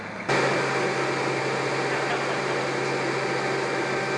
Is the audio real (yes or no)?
yes